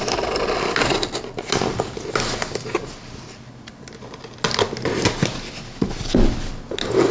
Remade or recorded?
recorded